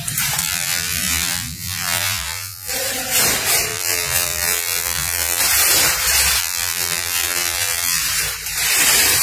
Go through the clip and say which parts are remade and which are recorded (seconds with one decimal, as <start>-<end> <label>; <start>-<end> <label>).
0.0-0.4 recorded; 0.4-2.7 remade; 2.7-3.7 recorded; 3.7-5.4 remade; 5.4-6.4 recorded; 6.4-8.0 remade; 8.0-9.2 recorded